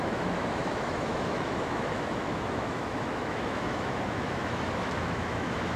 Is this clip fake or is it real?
fake